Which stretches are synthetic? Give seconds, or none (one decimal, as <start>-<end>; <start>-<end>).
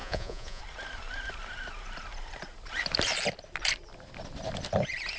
0.0-0.6